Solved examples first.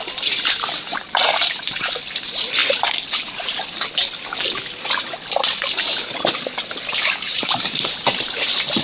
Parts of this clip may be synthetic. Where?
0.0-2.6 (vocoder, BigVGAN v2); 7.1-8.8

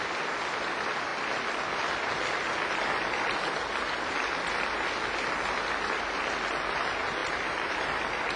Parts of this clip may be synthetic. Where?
7.2-8.4 (vocoder, BigVGAN v2)

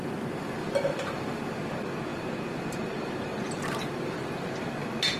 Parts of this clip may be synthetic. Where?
0.6-1.4 (vocoder, BigVGAN v2); 2.1-4.7

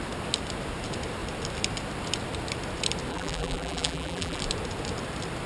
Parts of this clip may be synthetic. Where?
3.1-4.4 (vocoder, BigVGAN v2)

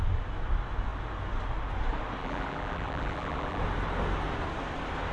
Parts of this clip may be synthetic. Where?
2.2-3.6 (vocoder, BigVGAN v2)